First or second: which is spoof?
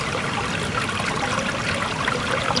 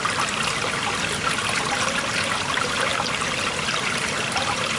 first